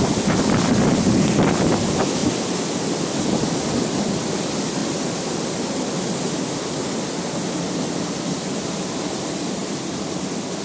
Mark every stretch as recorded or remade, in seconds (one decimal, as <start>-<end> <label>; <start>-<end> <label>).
0.0-2.2 recorded; 2.2-4.2 remade; 4.2-4.8 recorded; 4.8-5.9 remade; 5.9-9.6 recorded; 9.6-10.2 remade; 10.2-10.6 recorded